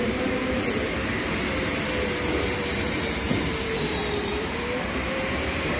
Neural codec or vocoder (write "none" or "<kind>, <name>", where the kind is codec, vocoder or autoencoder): vocoder, BigVGAN v2